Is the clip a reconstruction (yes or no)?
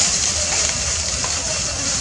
no